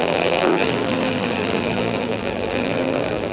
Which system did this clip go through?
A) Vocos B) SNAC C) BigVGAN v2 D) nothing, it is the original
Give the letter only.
C